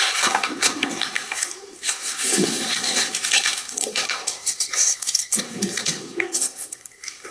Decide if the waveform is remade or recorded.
remade